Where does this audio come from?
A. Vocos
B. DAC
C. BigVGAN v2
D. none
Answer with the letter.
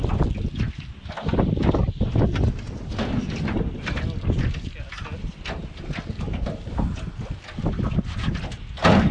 D